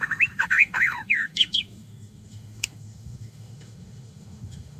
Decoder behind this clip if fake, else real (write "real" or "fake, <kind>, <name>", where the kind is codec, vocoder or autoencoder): fake, autoencoder, DAC-VAE